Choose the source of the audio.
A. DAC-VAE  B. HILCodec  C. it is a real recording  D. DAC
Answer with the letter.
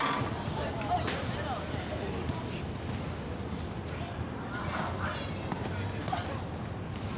C